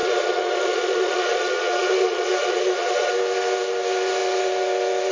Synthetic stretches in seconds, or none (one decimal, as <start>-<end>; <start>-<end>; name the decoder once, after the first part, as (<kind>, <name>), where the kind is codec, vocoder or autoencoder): 0.0-3.1 (vocoder, Vocos)